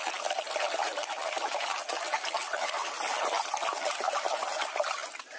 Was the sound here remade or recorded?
recorded